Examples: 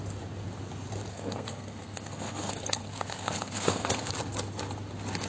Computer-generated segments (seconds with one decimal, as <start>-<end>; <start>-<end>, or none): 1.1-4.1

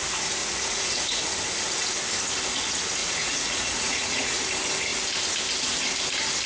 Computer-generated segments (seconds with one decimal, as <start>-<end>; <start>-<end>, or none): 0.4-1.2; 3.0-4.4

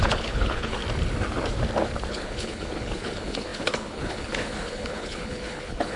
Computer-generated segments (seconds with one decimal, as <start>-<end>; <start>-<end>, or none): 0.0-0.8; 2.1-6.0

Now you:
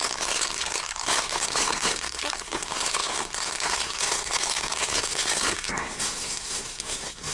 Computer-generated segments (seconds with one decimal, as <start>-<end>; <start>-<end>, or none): 0.0-7.3

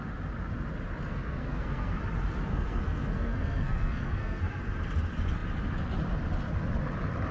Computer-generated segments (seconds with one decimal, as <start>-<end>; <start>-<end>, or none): 1.1-2.0; 2.5-4.4

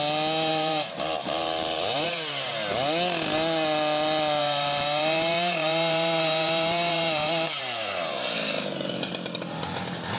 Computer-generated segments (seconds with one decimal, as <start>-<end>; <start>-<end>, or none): 0.5-2.5; 4.4-9.1